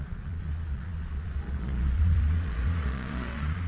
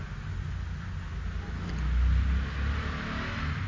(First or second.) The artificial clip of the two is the first